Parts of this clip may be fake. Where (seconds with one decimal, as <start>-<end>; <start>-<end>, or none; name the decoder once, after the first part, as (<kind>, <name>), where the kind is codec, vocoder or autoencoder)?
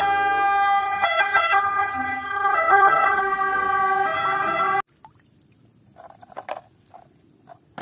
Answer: 0.8-3.2 (vocoder, HiFi-GAN)